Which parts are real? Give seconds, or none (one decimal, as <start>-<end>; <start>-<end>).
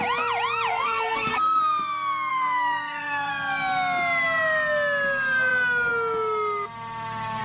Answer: 0.0-0.7; 1.6-2.3; 3.3-7.4